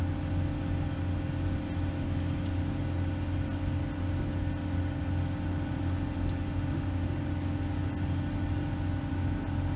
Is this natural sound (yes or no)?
yes